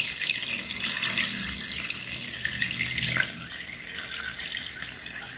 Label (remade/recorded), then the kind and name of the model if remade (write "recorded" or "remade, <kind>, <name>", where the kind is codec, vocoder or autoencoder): recorded